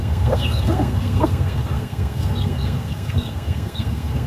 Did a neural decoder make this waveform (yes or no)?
yes